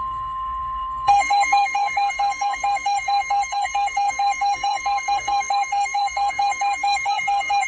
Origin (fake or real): fake